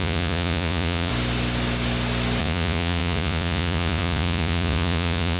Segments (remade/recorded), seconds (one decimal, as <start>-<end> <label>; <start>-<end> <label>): 0.0-1.1 remade; 1.1-2.4 recorded; 2.4-5.4 remade